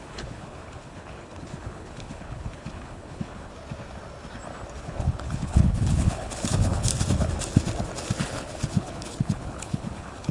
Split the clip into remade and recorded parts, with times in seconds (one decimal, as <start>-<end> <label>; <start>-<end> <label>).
0.0-3.5 remade; 3.5-4.8 recorded; 4.8-6.9 remade; 6.9-8.2 recorded; 8.2-10.3 remade